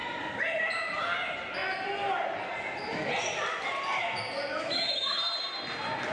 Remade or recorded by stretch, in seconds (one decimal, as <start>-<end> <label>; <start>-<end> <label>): 0.0-4.5 recorded; 4.5-5.2 remade; 5.2-6.1 recorded